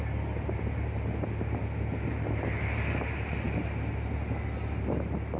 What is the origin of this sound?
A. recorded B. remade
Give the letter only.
A